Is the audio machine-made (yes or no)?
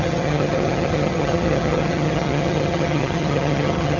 yes